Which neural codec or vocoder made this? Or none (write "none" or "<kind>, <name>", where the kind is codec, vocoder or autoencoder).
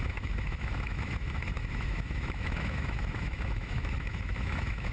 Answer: autoencoder, DAC-VAE